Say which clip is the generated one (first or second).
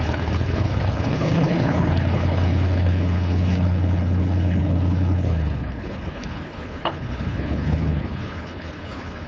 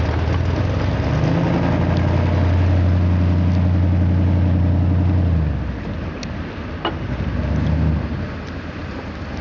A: first